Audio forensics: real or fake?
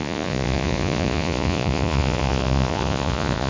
fake